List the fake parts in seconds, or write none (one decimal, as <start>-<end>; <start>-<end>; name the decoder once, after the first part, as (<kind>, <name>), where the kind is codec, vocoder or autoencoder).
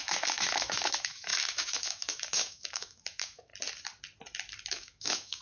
0.0-3.5 (autoencoder, DAC-VAE); 4.7-5.4